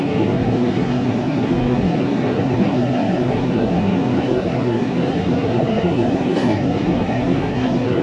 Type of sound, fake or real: fake